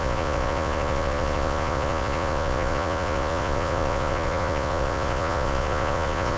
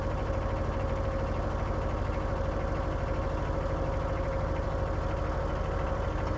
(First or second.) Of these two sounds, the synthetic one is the first